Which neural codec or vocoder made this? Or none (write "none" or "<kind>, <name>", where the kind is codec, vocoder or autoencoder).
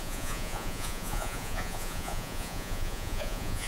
vocoder, Vocos